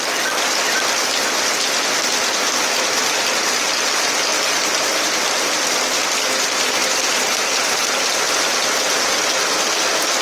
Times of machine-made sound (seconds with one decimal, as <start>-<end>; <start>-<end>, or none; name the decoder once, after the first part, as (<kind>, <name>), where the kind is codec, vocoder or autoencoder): none